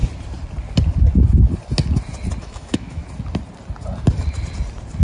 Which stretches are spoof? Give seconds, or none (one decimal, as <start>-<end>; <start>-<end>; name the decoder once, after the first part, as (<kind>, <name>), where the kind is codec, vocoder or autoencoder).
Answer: 2.4-3.0 (autoencoder, DAC-VAE)